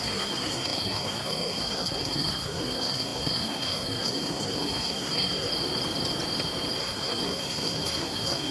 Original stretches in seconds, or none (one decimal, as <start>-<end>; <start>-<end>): 5.5-6.8